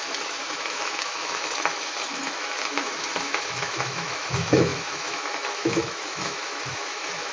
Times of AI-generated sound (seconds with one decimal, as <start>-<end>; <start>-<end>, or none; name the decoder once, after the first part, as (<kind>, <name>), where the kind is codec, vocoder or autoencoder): 0.0-7.3 (autoencoder, DAC-VAE)